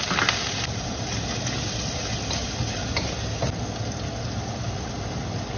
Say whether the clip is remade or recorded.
recorded